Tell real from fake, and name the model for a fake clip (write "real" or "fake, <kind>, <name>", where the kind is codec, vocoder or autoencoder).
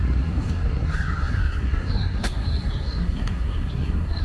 fake, codec, SNAC